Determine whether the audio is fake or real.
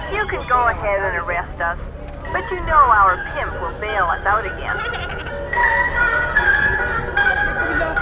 real